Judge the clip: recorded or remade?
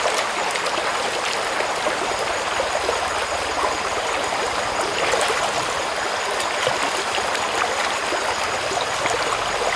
recorded